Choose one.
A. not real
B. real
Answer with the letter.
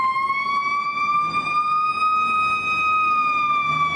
B